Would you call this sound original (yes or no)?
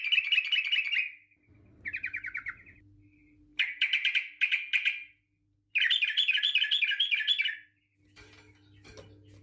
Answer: yes